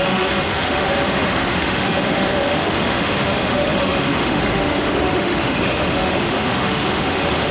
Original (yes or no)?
no